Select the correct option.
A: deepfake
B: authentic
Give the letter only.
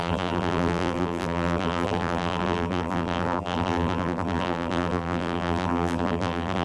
A